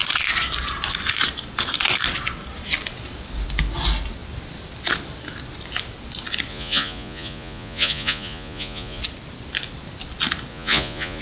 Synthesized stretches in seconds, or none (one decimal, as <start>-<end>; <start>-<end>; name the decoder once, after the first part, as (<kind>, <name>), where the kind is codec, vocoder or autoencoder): 6.5-9.0 (vocoder, Vocos); 10.5-11.2